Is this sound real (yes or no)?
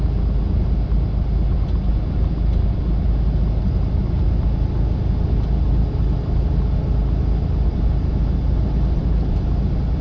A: yes